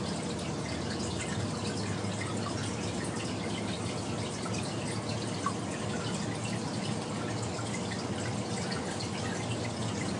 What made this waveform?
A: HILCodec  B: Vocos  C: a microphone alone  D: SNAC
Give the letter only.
C